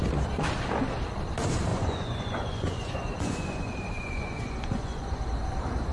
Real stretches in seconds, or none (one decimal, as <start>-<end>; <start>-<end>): 0.0-1.7; 5.2-5.9